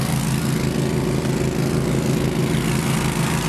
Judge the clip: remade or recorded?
recorded